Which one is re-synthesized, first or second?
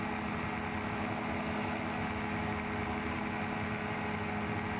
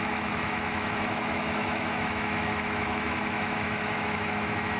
second